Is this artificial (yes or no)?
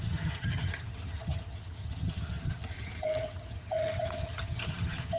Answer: yes